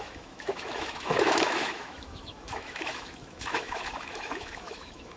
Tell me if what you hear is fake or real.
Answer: fake